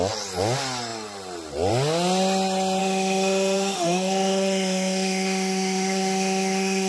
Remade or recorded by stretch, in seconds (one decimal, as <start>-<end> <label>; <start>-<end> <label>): 0.0-2.8 recorded; 2.8-6.9 remade